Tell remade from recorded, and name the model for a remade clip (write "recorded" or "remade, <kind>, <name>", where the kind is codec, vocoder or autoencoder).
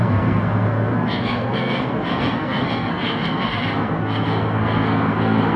remade, codec, SNAC